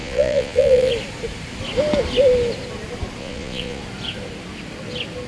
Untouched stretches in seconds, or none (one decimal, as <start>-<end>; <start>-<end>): 0.9-3.2; 3.8-5.3